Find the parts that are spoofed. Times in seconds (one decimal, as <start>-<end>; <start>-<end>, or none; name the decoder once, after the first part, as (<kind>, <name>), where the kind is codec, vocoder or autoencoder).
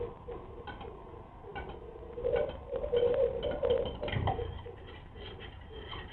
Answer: none